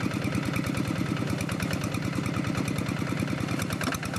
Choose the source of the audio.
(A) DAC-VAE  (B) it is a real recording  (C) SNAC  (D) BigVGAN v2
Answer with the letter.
B